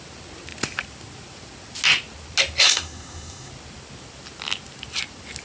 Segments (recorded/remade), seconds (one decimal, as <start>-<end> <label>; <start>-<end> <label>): 0.0-2.6 recorded; 2.6-3.5 remade; 3.5-5.4 recorded